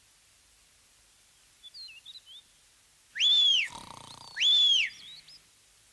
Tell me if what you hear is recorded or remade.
recorded